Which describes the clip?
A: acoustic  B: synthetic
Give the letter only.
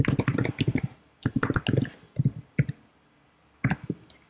A